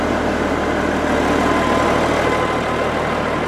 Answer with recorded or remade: recorded